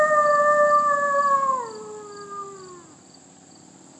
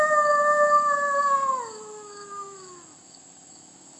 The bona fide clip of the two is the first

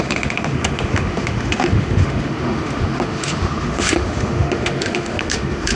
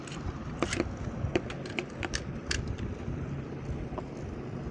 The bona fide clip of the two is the second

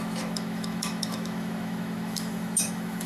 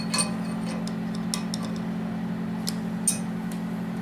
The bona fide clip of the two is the second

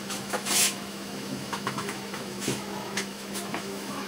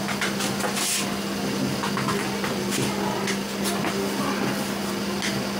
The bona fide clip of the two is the second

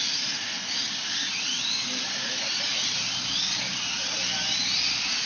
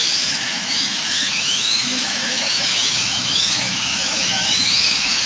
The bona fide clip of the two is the first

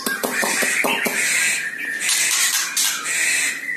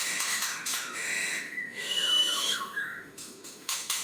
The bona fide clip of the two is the first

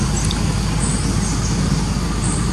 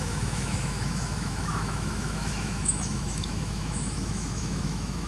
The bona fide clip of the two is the first